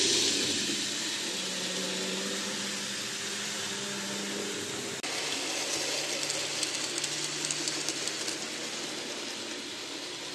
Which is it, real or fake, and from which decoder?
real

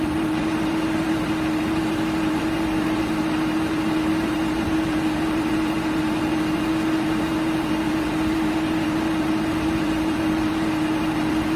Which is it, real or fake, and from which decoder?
fake, vocoder, BigVGAN v2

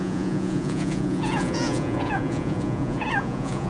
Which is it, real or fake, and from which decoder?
fake, vocoder, Vocos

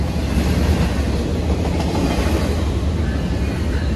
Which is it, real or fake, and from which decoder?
real